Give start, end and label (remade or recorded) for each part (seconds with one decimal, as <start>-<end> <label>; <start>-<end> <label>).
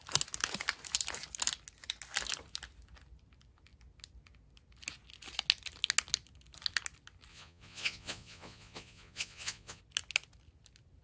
0.0-7.3 recorded; 7.3-9.8 remade; 9.8-11.0 recorded